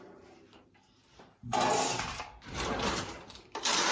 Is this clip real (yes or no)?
no